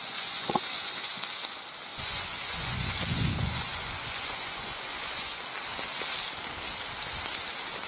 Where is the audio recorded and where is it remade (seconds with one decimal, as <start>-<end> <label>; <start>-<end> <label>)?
0.0-1.1 remade; 1.1-1.9 recorded; 1.9-5.4 remade; 5.4-7.9 recorded